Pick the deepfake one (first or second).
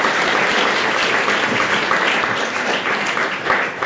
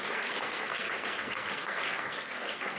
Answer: second